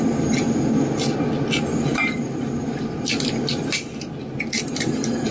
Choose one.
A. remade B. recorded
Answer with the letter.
B